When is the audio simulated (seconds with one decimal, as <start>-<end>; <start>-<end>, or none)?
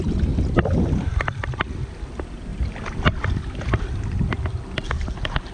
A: none